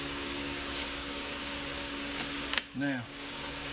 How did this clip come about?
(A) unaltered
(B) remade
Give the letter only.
B